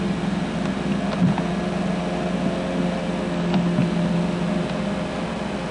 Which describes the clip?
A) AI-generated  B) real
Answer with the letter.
B